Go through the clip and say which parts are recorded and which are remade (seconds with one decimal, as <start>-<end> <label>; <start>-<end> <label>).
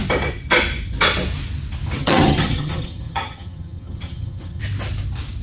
0.0-2.0 recorded; 2.0-4.6 remade; 4.6-5.4 recorded